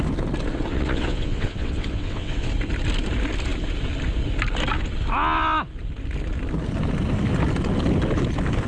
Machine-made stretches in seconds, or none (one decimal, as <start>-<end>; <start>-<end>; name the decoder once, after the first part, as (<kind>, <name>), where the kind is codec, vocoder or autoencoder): 0.7-2.5 (vocoder, WaveNeXt)